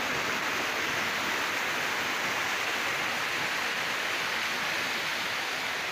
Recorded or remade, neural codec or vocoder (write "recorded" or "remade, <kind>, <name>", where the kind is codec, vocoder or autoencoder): recorded